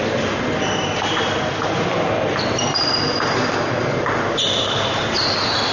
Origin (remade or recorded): recorded